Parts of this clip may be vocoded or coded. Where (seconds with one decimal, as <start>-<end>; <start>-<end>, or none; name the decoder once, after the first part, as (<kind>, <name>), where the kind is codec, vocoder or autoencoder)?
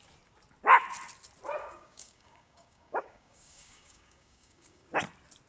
1.6-4.9 (codec, DAC)